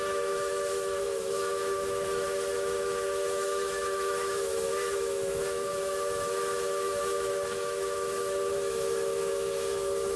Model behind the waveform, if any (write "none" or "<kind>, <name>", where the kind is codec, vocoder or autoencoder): autoencoder, DAC-VAE